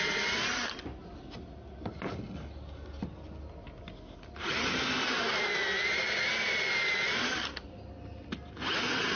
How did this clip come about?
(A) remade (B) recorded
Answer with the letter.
B